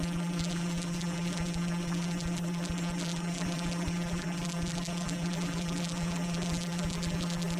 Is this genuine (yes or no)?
no